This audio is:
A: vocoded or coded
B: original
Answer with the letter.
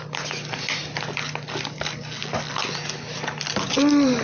B